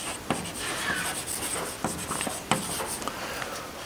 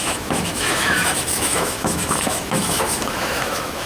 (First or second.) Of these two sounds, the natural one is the first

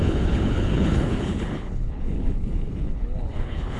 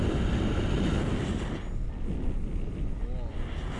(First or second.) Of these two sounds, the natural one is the second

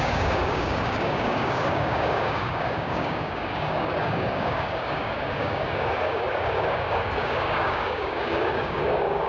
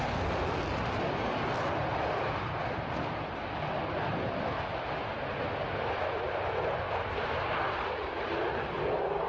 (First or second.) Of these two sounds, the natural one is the second